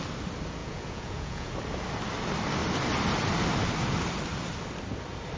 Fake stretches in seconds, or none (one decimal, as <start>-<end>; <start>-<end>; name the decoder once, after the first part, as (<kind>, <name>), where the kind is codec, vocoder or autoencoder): 0.6-1.5 (vocoder, Vocos)